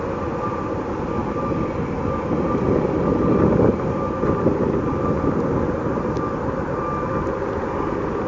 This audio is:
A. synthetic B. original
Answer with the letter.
B